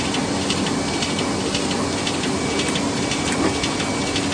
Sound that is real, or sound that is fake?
real